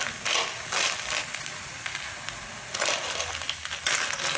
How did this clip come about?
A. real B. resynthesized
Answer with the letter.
A